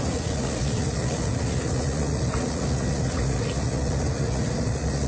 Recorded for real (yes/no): no